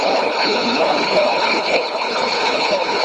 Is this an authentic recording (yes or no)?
no